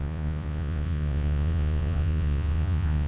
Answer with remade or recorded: remade